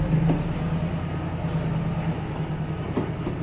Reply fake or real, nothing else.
real